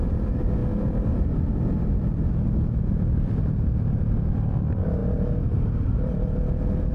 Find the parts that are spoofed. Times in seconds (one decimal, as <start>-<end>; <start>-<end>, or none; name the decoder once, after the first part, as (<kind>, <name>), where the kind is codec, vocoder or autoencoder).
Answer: none